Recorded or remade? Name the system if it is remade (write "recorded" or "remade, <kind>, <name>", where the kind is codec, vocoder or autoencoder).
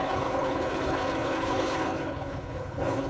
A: remade, codec, HILCodec